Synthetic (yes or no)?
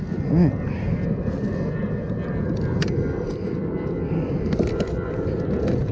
no